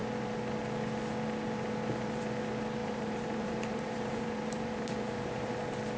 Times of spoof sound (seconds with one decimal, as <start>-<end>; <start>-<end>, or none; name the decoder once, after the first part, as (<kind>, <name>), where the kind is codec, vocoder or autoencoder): 2.8-5.5 (vocoder, BigVGAN v2)